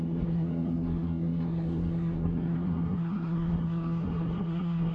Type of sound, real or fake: fake